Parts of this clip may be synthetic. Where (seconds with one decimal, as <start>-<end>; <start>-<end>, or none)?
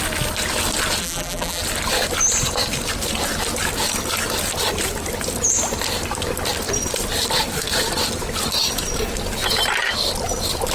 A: 1.0-1.6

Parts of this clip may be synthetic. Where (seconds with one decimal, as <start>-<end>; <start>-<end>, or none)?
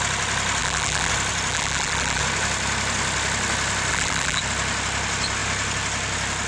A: 0.6-1.1; 1.5-2.2; 3.9-4.4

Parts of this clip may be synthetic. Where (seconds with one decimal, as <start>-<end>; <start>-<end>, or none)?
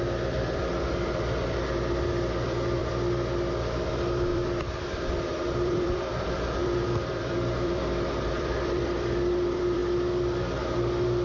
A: 0.0-2.8; 3.9-9.8; 10.4-11.2